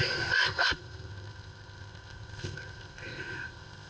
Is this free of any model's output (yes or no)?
no